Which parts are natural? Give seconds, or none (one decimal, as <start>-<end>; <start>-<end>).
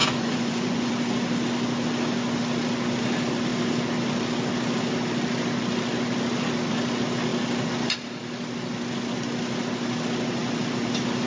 0.9-11.3